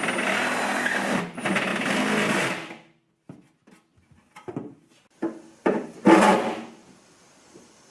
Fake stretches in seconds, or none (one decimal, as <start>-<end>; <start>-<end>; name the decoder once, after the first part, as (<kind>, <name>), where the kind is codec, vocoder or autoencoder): none